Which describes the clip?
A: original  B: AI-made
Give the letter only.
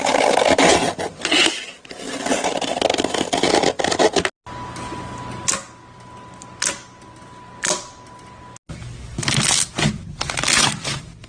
A